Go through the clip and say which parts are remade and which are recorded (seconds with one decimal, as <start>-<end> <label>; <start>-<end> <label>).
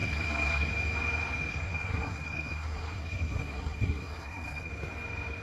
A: 0.0-0.7 remade; 0.7-1.5 recorded; 1.5-4.7 remade; 4.7-5.4 recorded